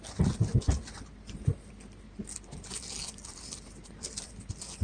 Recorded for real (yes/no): yes